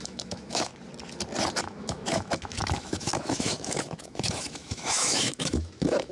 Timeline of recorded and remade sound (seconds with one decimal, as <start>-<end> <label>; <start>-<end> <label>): 0.0-0.7 remade; 0.7-1.6 recorded; 1.6-6.1 remade